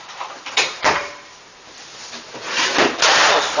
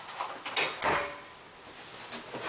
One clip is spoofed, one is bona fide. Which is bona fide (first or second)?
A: second